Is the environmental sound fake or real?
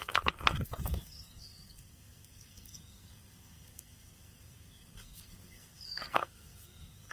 fake